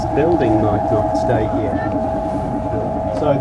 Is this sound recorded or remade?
remade